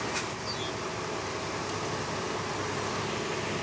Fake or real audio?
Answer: real